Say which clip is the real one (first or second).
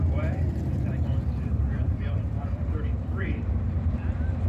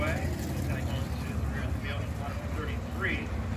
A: second